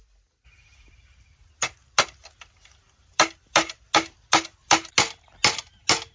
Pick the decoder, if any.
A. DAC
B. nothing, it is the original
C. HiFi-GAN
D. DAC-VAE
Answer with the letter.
B